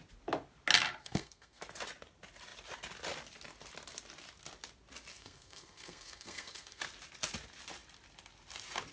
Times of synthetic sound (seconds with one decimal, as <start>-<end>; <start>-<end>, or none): 1.0-1.6; 5.1-6.8